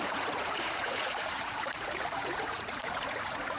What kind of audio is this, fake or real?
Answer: fake